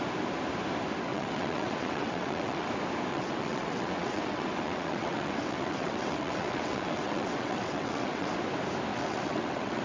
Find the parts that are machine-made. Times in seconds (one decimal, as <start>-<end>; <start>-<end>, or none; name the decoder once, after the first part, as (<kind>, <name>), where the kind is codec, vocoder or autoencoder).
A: 1.1-2.7 (vocoder, WaveNeXt); 3.1-8.3; 8.9-9.8